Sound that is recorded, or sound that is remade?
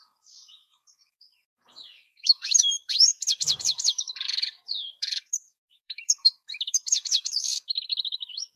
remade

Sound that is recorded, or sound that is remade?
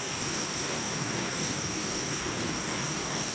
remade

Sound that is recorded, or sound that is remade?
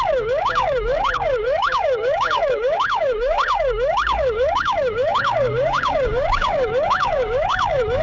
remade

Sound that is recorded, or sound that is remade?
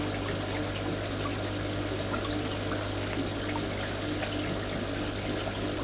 recorded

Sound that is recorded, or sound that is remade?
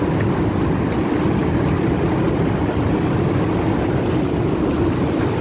recorded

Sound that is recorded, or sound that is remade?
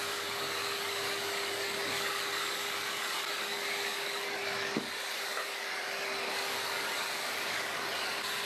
remade